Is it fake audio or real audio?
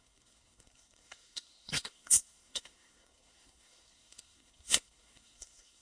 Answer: fake